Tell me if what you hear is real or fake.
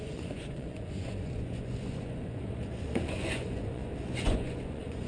fake